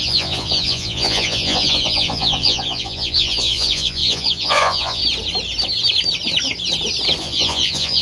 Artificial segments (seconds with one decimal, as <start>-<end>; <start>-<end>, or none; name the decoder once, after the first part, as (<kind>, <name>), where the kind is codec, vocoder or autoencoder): 0.0-5.0 (vocoder, Vocos); 7.2-8.0